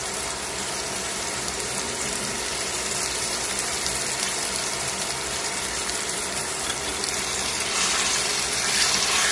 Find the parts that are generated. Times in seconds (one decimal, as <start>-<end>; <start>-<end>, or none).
0.0-9.3